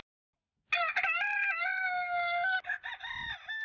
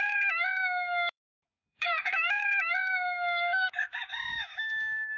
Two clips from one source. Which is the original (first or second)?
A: first